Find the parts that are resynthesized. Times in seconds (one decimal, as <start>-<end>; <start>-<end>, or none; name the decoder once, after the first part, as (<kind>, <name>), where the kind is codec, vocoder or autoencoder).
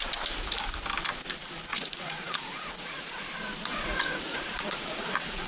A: 1.7-3.3 (vocoder, Vocos); 3.7-5.5